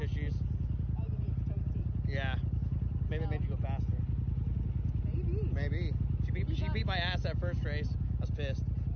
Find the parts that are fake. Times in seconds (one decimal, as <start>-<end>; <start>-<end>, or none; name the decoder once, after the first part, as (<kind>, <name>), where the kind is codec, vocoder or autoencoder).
none